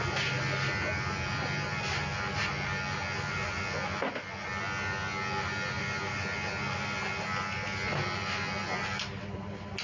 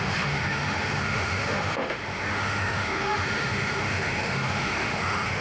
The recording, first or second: first